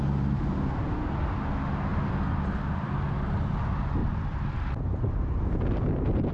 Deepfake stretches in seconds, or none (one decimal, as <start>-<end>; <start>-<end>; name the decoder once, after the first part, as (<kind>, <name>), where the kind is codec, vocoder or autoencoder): 1.9-2.9 (vocoder, BigVGAN v2); 4.0-5.0